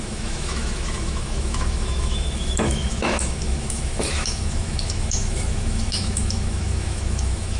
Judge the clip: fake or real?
fake